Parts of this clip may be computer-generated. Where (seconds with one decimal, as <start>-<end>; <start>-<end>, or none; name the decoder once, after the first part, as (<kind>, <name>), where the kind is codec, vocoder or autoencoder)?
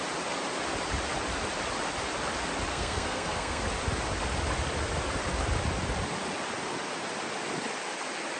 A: 2.7-3.6 (codec, SNAC)